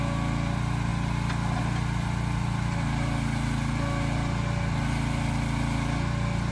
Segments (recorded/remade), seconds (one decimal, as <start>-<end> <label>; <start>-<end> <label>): 0.0-6.5 recorded